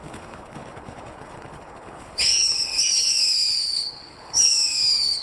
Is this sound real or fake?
fake